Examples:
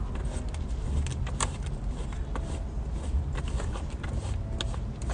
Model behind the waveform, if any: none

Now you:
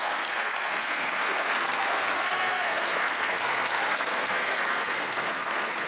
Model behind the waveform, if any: codec, SNAC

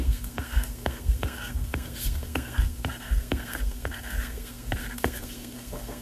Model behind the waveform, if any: codec, SNAC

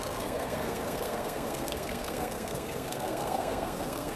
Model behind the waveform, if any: codec, SNAC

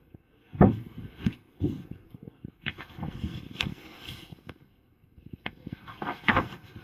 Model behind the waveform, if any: codec, SNAC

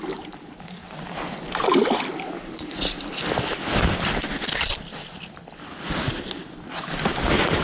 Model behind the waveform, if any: none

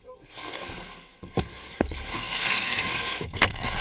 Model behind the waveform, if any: codec, SNAC